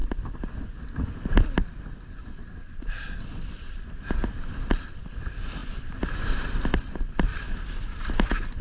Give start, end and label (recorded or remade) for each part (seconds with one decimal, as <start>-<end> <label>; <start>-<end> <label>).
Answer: 0.0-2.4 recorded; 2.4-3.7 remade; 3.7-5.6 recorded; 5.6-6.4 remade; 6.4-7.3 recorded; 7.3-8.6 remade